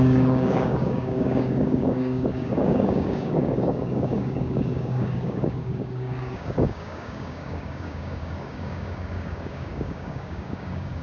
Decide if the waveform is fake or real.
fake